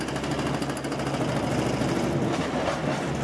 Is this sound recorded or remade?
recorded